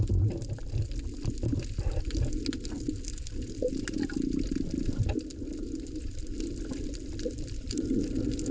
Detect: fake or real real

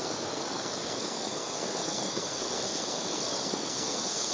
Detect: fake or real fake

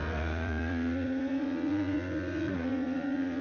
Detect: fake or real fake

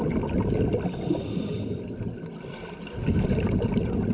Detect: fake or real real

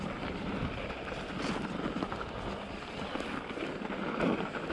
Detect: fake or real real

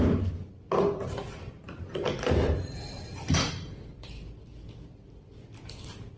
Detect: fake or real real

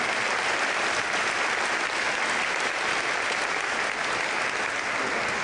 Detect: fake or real real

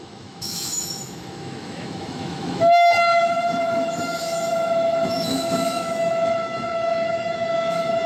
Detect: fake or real fake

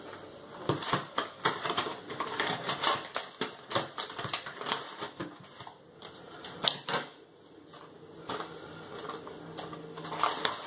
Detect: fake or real real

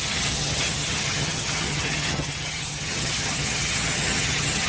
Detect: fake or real fake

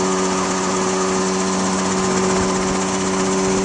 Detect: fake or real real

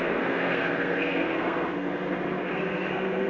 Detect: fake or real fake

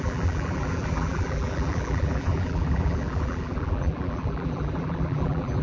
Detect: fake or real fake